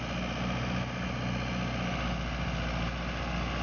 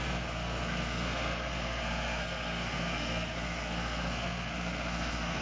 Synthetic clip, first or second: second